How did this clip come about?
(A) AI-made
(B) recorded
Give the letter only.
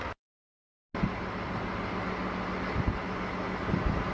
B